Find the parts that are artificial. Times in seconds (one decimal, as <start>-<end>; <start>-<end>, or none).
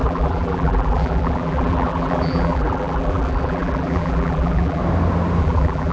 0.0-4.8; 5.4-5.9